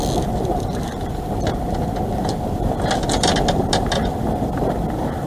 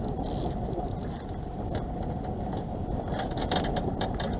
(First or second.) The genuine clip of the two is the first